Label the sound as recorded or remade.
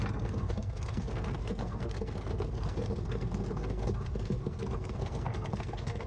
remade